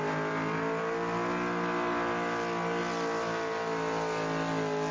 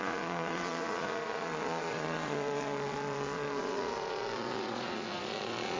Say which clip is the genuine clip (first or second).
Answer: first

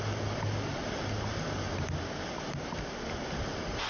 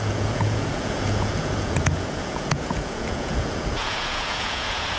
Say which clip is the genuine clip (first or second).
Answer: first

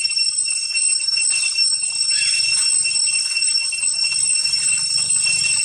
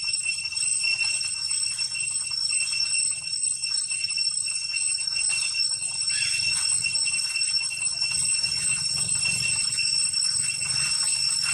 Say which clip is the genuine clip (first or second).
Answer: first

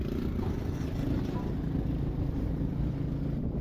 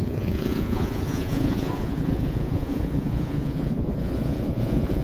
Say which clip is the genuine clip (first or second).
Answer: first